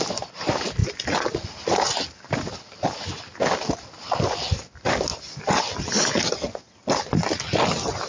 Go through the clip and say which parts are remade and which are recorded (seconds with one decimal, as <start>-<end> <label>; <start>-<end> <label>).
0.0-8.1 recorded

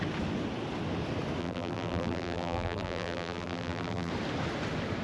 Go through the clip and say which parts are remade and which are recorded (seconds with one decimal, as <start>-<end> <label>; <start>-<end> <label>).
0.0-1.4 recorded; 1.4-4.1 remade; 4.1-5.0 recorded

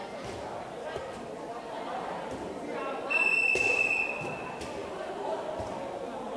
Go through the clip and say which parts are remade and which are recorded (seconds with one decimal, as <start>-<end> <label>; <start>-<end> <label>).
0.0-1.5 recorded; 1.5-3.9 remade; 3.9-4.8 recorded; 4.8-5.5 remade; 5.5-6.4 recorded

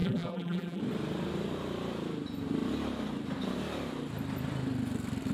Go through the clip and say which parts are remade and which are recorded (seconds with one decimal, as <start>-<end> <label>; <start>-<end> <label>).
0.0-0.8 remade; 0.8-5.3 recorded